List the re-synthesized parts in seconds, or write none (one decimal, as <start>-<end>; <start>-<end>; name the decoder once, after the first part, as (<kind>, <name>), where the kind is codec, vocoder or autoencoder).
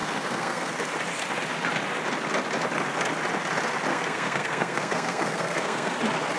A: 0.0-0.7 (codec, SNAC); 3.9-6.0